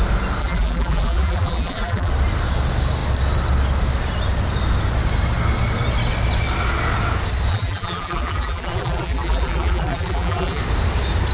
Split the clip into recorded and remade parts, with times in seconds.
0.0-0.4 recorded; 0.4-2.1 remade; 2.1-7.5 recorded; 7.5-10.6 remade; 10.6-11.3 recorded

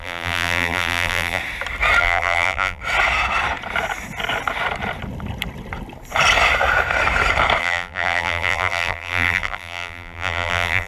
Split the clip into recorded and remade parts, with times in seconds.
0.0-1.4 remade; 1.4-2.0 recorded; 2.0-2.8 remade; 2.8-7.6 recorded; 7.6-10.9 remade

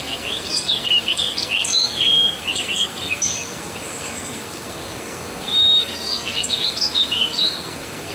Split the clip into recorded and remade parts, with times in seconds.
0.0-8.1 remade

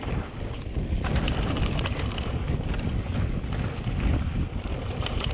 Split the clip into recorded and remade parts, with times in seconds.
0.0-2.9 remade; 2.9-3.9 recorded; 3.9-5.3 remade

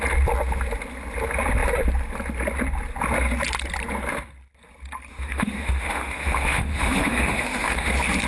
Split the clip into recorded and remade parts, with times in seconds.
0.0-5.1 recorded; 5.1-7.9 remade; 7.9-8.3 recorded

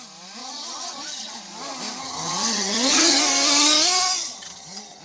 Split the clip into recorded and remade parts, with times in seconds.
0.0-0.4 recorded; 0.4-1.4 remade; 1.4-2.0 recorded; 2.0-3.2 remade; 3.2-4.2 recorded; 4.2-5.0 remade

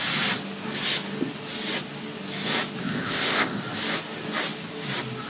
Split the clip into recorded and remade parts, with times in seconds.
0.0-2.8 recorded; 2.8-3.6 remade; 3.6-5.3 recorded